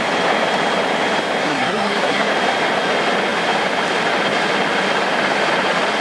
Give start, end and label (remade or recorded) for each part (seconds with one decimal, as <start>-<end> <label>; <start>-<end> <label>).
0.0-1.4 recorded; 1.4-2.3 remade; 2.3-6.0 recorded